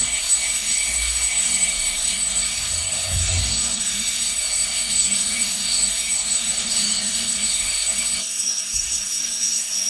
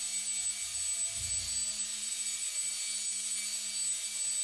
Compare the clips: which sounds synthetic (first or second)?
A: first